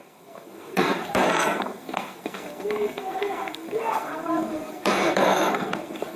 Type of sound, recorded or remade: remade